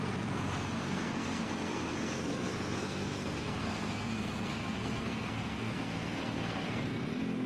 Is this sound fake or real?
fake